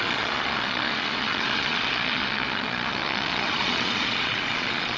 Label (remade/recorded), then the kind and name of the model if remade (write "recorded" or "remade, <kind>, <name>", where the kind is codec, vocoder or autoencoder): remade, vocoder, Vocos